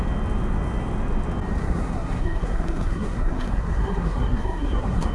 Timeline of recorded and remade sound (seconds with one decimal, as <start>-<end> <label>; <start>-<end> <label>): 0.0-1.6 recorded; 1.6-5.1 remade